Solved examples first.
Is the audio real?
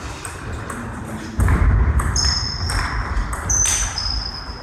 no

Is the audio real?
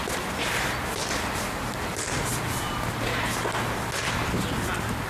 yes